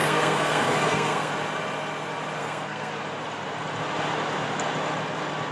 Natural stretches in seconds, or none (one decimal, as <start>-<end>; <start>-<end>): 1.3-2.4; 2.9-5.5

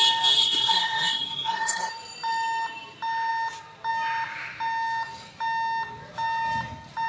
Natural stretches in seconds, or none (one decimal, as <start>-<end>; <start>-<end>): 0.0-0.4; 1.9-7.1

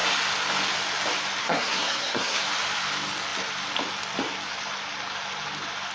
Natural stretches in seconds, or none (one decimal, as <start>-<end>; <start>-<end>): 0.0-1.4; 2.4-5.9

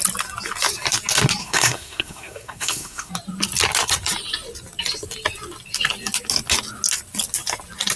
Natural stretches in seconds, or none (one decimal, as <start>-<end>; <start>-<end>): 0.0-1.4; 3.1-8.0

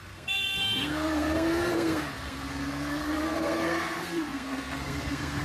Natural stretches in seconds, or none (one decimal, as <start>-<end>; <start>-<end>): none

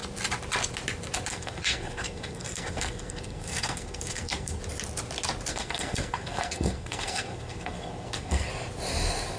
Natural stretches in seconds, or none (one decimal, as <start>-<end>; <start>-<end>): 0.0-1.3; 4.6-5.5; 8.5-9.4

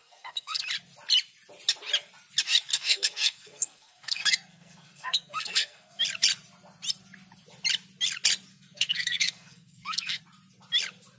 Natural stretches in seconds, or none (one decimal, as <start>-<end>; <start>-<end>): 0.6-2.7; 6.0-8.5; 10.2-11.2